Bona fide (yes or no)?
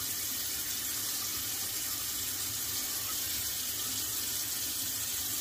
yes